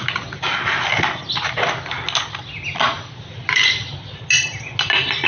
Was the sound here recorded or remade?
recorded